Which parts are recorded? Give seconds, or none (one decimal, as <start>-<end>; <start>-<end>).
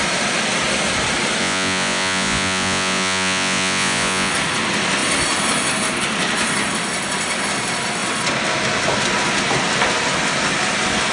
0.0-1.4; 4.3-11.1